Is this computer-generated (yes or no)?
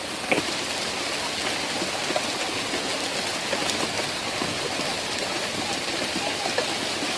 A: no